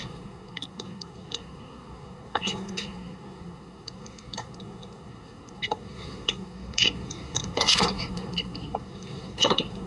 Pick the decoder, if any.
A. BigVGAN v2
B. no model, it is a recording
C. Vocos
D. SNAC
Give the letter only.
D